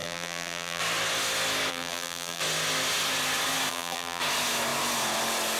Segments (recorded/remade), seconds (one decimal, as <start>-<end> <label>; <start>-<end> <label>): 0.0-0.8 remade; 0.8-1.7 recorded; 1.7-2.4 remade; 2.4-3.7 recorded; 3.7-4.2 remade; 4.2-5.6 recorded